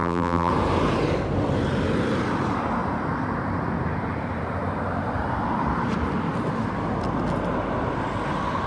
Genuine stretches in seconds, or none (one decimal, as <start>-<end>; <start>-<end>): 0.5-8.7